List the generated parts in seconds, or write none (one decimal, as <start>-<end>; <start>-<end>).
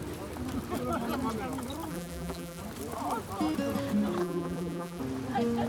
1.9-2.6; 4.2-5.0